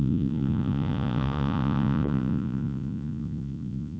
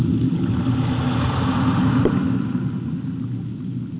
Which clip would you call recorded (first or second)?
second